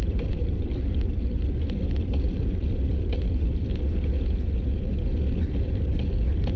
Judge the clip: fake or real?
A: fake